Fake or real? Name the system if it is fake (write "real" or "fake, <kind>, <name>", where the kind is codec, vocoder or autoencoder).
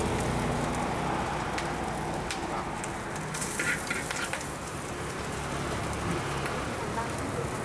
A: real